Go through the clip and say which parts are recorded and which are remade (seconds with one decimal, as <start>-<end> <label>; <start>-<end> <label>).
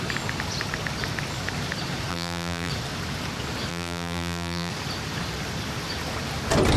0.0-2.1 recorded; 2.1-2.7 remade; 2.7-3.7 recorded; 3.7-4.7 remade; 4.7-6.8 recorded